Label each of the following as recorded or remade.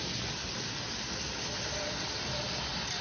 recorded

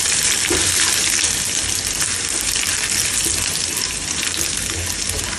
remade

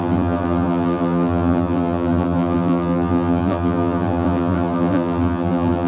remade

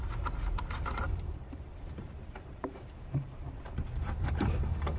remade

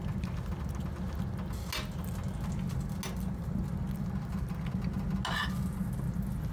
recorded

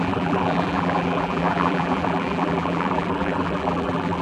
remade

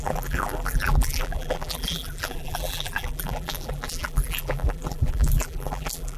remade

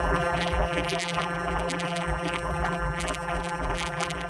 remade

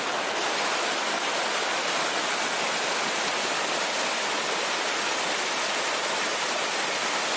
recorded